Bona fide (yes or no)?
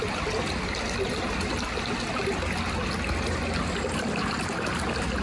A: yes